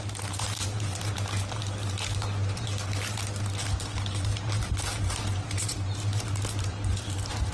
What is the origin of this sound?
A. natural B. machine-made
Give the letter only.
B